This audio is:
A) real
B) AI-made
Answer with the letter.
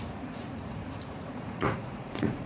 B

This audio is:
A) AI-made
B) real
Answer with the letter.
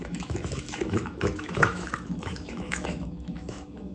A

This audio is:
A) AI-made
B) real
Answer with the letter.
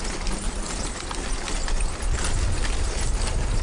B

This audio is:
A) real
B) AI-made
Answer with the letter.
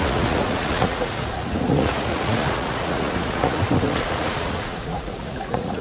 B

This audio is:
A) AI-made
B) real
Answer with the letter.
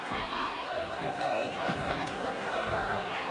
A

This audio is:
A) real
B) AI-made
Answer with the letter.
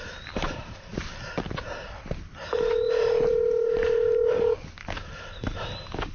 B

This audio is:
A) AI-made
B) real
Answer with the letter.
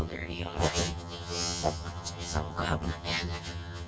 A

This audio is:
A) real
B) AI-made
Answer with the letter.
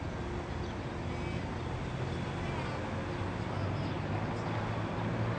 A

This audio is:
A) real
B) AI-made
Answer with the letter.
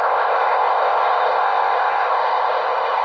B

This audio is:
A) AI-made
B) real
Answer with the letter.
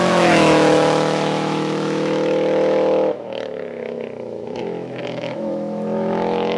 A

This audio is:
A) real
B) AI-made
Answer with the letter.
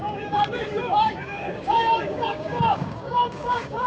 B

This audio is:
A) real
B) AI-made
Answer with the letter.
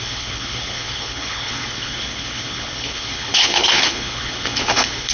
B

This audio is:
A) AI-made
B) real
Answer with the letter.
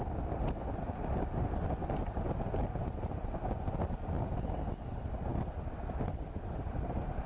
B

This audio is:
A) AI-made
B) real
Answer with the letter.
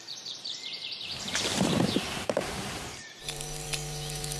A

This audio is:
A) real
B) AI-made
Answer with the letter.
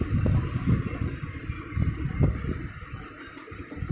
A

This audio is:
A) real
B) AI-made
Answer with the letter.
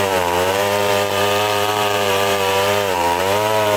B